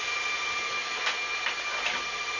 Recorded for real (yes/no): yes